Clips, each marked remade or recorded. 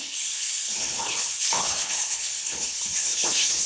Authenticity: remade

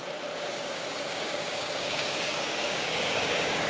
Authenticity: remade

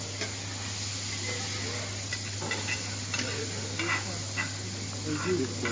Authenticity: recorded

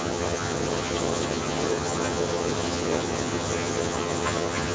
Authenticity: remade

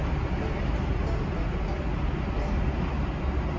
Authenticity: recorded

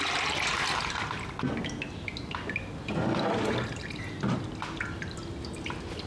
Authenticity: recorded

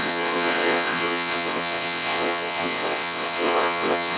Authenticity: remade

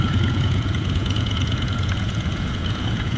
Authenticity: remade